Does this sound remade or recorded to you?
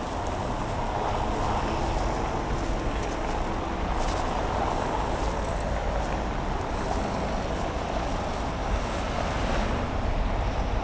recorded